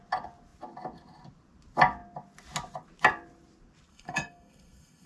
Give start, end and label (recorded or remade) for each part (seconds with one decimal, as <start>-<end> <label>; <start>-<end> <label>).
0.0-3.9 recorded; 3.9-5.1 remade